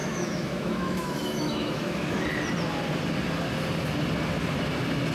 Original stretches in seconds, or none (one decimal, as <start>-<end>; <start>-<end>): 2.2-5.1